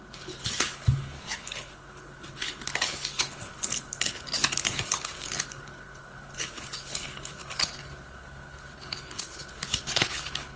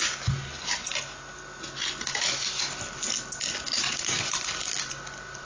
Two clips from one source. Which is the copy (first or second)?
first